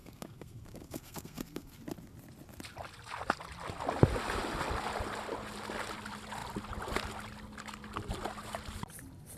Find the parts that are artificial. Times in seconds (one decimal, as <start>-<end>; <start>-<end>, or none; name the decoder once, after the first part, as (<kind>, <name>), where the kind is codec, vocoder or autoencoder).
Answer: 0.0-1.8 (codec, SNAC)